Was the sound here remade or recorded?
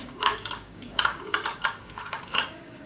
remade